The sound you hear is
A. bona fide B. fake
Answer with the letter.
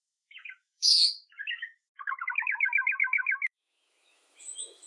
B